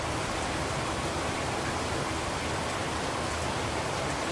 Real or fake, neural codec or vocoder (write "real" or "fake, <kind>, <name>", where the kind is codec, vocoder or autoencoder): real